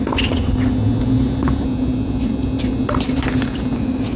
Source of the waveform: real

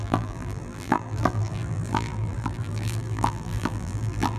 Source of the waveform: fake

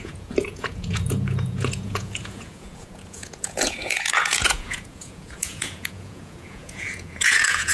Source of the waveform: fake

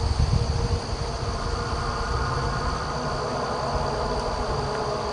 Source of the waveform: real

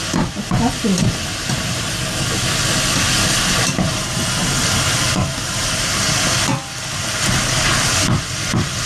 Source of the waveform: real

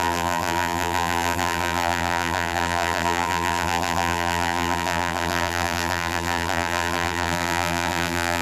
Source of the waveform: fake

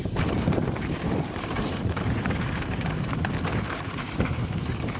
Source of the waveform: fake